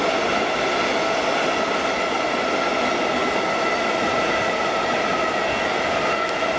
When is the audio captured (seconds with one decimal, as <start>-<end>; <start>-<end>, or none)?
0.0-4.1; 5.1-6.6